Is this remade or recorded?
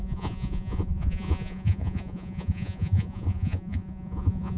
remade